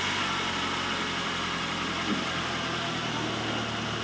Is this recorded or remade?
recorded